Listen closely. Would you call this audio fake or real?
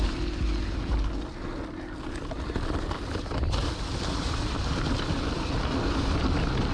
real